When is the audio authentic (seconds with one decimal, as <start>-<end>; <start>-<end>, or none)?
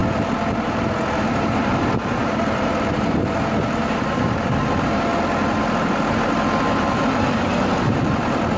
0.0-1.3; 5.1-5.6